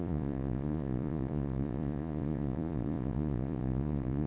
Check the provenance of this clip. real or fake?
fake